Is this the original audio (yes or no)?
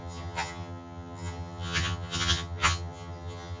no